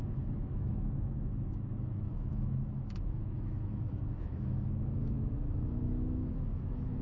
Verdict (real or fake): fake